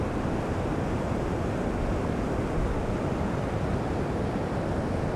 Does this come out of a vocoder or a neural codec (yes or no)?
no